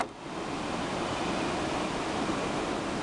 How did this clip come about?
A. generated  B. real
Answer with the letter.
B